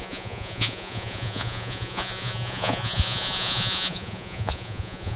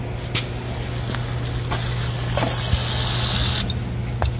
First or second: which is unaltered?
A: second